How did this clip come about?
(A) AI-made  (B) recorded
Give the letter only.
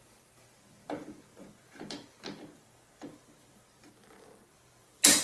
A